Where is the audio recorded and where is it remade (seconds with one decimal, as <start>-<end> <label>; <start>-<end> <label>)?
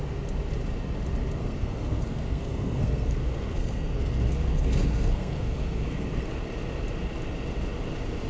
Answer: 0.0-1.4 recorded; 1.4-6.4 remade; 6.4-8.3 recorded